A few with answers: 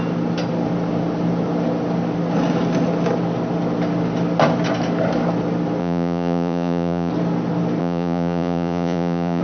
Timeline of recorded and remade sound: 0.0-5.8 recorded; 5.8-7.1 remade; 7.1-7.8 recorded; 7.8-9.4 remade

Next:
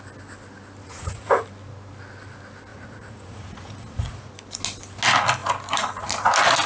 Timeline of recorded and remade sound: 0.0-0.8 recorded; 0.8-1.4 remade; 1.4-2.7 recorded; 2.7-4.3 remade; 4.3-6.7 recorded

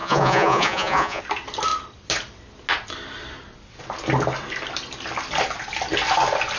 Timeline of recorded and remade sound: 0.0-1.2 remade; 1.2-6.6 recorded

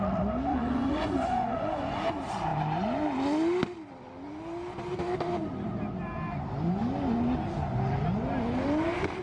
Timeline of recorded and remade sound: 0.0-0.5 recorded; 0.5-2.0 remade; 2.0-9.2 recorded

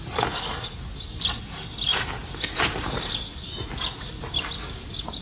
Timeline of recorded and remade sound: 0.0-5.2 recorded

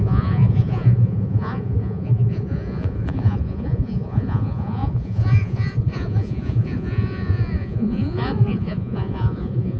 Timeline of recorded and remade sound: 0.0-9.8 remade

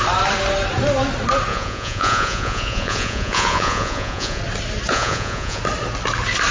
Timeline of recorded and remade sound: 0.0-1.5 recorded; 1.5-4.4 remade; 4.4-4.9 recorded; 4.9-5.6 remade; 5.6-6.5 recorded

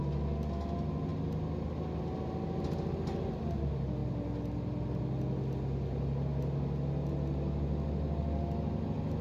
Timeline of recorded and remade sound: 0.0-9.2 recorded